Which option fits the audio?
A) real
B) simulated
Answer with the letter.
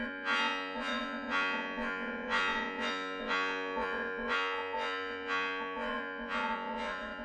B